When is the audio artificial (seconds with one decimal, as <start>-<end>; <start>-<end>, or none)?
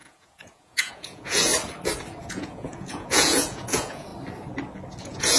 0.0-1.5; 2.2-4.1; 5.0-5.4